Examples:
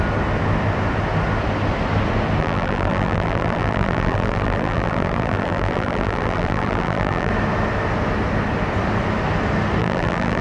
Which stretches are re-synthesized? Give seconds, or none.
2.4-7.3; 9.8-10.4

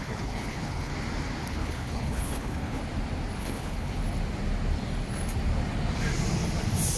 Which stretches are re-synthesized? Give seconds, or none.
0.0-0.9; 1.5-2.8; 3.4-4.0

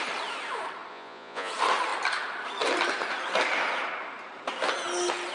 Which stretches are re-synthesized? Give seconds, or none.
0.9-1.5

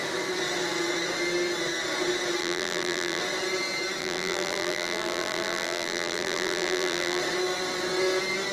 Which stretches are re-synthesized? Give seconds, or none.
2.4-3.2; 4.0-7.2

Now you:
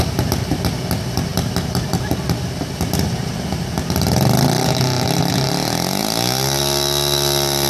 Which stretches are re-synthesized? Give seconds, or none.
none

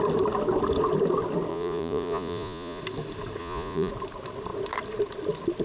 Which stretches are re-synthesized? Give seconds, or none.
1.5-2.8; 3.4-3.9